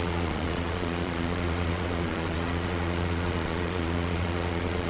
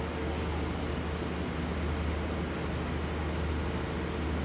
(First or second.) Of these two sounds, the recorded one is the second